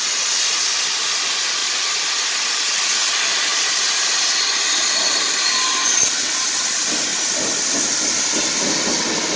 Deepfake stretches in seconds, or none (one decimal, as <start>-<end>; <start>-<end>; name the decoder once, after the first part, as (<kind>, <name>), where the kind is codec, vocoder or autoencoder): 1.6-2.1 (vocoder, BigVGAN v2); 3.5-6.1